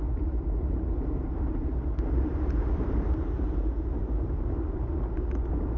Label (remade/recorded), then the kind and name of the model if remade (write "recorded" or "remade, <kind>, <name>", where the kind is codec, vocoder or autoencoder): remade, vocoder, BigVGAN v2